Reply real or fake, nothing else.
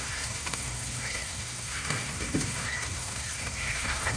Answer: fake